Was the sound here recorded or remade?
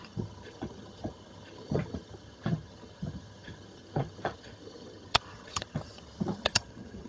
remade